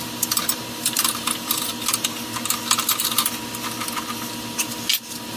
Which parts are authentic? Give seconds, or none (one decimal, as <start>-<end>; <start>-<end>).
1.7-4.9